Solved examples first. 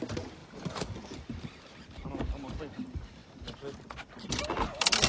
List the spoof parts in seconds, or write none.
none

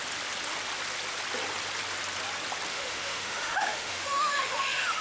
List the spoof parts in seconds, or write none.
2.7-5.0 (autoencoder, DAC-VAE)

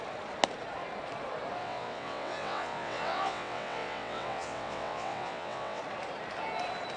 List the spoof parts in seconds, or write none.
1.6-5.8 (vocoder, WaveNeXt)

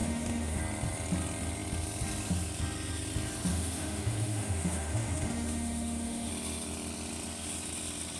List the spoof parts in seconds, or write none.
0.0-0.6 (autoencoder, DAC-VAE); 3.5-6.3